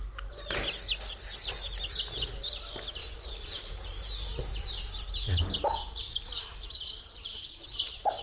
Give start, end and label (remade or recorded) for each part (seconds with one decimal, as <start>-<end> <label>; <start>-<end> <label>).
0.0-3.0 recorded; 3.0-8.2 remade